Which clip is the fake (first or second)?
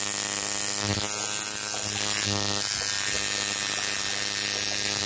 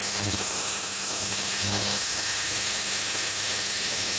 second